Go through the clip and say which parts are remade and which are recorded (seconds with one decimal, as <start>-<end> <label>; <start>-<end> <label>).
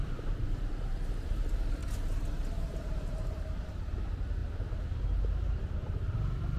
0.0-1.8 remade; 1.8-2.8 recorded; 2.8-4.4 remade; 4.4-5.6 recorded; 5.6-6.6 remade